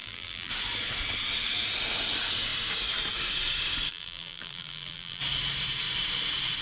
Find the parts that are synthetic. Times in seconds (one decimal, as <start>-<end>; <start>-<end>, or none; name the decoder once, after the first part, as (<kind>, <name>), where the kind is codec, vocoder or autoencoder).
0.0-0.5 (vocoder, BigVGAN v2); 3.9-5.2